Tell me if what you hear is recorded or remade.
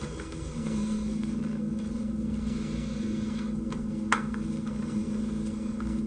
remade